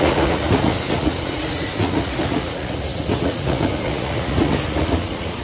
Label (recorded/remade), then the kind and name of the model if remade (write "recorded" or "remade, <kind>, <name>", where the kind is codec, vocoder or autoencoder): remade, vocoder, Vocos